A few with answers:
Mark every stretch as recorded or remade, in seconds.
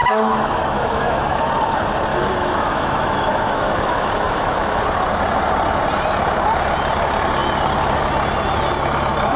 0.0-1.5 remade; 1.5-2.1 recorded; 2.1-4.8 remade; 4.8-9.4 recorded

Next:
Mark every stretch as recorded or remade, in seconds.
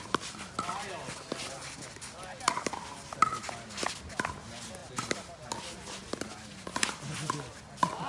0.0-8.1 recorded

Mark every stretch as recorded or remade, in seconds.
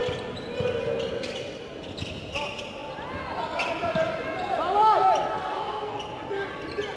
0.0-5.3 recorded; 5.3-6.0 remade; 6.0-7.0 recorded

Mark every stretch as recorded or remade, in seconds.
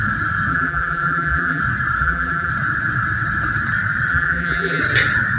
0.0-0.5 recorded; 0.5-1.6 remade; 1.6-2.0 recorded; 2.0-2.5 remade; 2.5-4.1 recorded; 4.1-4.8 remade; 4.8-5.4 recorded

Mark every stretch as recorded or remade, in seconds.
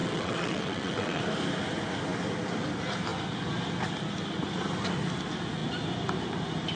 0.0-1.2 remade; 1.2-6.8 recorded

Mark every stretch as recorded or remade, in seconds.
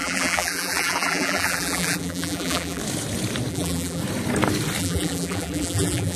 0.0-2.8 remade; 2.8-3.5 recorded; 3.5-4.0 remade; 4.0-4.8 recorded; 4.8-6.2 remade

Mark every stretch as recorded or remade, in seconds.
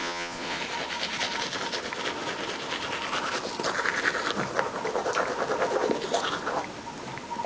0.0-0.6 remade; 0.6-7.5 recorded